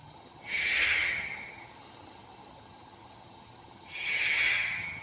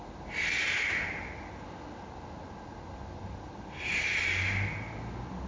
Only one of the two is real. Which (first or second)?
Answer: second